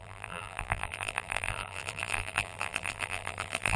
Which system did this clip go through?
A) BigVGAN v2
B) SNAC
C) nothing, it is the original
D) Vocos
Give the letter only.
A